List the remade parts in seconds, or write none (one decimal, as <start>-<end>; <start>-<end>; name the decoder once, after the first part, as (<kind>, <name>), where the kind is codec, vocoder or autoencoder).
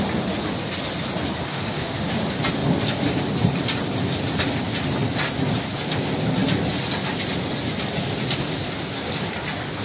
1.5-2.1 (autoencoder, DAC-VAE)